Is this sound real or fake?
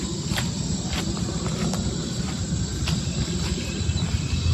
real